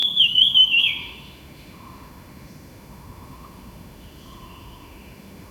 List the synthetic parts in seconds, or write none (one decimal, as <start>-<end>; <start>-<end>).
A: 0.0-5.5